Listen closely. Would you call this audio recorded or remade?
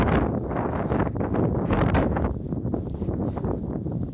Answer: recorded